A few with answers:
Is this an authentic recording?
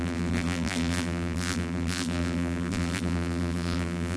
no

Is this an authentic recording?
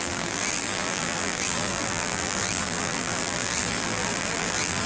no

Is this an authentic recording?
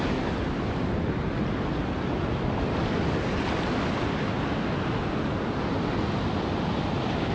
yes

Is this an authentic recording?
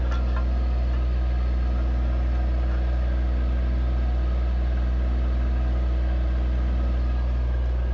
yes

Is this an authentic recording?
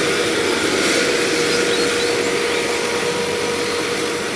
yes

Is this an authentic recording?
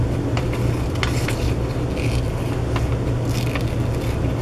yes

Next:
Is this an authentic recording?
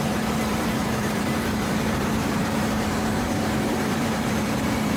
no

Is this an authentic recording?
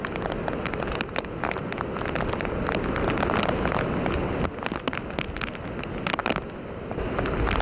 yes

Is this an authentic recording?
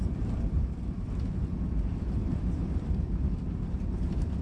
no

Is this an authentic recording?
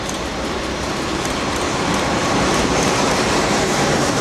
no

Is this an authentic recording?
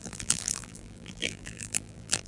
no